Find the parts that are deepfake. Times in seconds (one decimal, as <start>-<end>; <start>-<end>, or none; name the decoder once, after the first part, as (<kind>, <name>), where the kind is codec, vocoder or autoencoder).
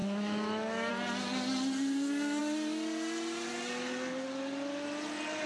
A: 0.0-0.9 (autoencoder, DAC-VAE)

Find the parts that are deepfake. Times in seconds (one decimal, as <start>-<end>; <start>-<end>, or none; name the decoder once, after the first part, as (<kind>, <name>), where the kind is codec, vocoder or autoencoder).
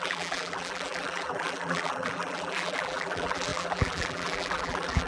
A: 0.0-5.1 (vocoder, BigVGAN v2)